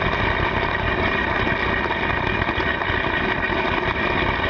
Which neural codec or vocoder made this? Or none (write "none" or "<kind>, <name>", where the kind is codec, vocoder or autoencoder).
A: none